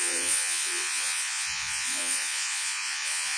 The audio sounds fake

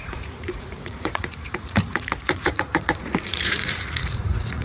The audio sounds fake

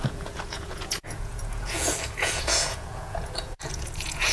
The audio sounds fake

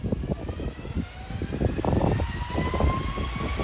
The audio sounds real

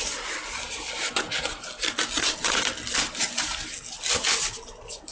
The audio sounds real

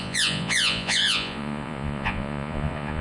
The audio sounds fake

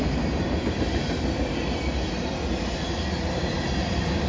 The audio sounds real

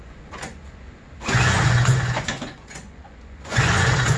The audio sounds fake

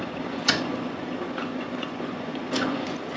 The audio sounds fake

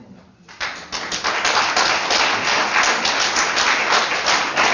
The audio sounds real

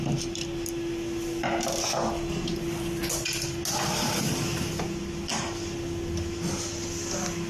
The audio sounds real